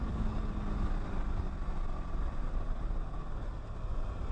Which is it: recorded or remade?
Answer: recorded